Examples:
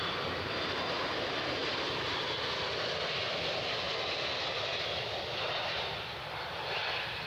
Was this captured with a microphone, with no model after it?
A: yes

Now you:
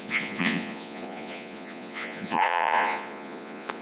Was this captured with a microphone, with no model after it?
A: no